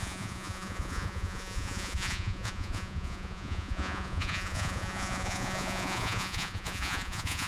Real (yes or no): no